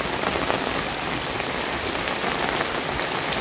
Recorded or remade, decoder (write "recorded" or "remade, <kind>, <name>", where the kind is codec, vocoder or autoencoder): recorded